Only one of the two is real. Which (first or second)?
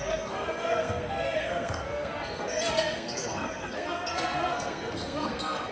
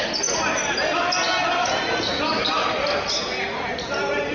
second